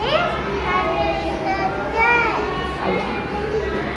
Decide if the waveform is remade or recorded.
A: recorded